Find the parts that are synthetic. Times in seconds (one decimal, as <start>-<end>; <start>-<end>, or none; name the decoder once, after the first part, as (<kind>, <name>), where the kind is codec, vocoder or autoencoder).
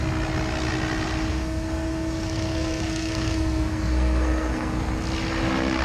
1.3-4.8 (codec, SNAC)